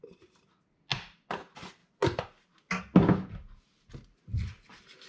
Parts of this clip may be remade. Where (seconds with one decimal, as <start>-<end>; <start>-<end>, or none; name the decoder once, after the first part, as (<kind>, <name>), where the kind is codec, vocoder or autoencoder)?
none